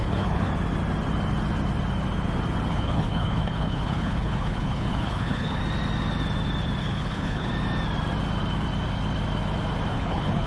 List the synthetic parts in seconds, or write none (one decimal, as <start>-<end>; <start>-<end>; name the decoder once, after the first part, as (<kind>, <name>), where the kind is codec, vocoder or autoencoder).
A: 0.0-0.5 (codec, HILCodec); 2.7-5.6; 6.8-7.5; 9.9-10.5